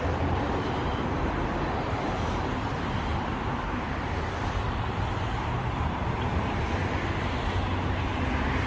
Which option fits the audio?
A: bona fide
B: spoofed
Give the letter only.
B